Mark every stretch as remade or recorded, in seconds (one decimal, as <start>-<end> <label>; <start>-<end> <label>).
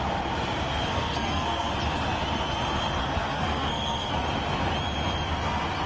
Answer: 0.0-0.7 recorded; 0.7-1.7 remade; 1.7-3.0 recorded; 3.0-4.1 remade; 4.1-5.9 recorded